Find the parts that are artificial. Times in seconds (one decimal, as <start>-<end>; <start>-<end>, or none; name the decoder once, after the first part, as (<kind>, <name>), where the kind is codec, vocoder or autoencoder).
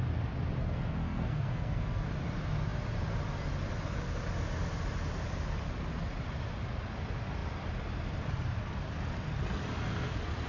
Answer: 0.6-2.1 (codec, SNAC)